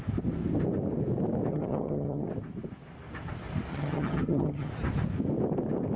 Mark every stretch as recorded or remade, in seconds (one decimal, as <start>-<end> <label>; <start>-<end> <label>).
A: 0.0-1.5 recorded; 1.5-2.3 remade; 2.3-3.7 recorded; 3.7-4.7 remade; 4.7-6.0 recorded